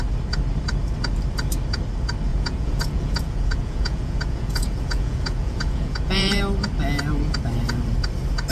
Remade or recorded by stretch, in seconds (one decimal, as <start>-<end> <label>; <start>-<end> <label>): 0.0-2.3 recorded; 2.3-6.4 remade; 6.4-8.5 recorded